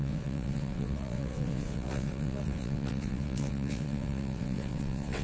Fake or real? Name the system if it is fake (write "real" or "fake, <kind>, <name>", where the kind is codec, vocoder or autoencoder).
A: fake, vocoder, WaveNeXt